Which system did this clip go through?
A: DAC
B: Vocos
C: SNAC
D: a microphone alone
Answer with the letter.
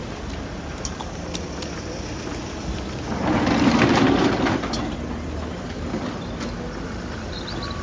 D